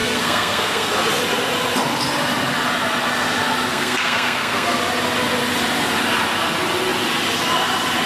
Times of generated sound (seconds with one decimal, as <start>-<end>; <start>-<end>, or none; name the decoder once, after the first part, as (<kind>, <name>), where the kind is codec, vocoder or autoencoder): 0.0-0.9 (codec, SNAC); 3.7-4.8